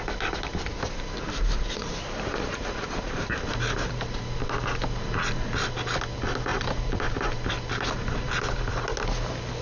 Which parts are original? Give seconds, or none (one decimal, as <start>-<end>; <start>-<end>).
0.0-0.7; 3.3-6.5; 7.5-9.6